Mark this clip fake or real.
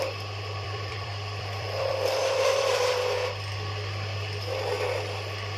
fake